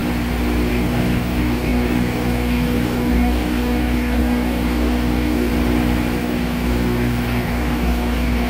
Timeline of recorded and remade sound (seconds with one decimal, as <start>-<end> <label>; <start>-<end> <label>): 0.0-0.7 recorded; 0.7-5.5 remade; 5.5-6.2 recorded; 6.2-8.5 remade